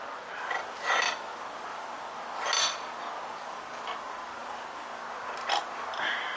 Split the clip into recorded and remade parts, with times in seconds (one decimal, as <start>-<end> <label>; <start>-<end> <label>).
0.0-6.4 recorded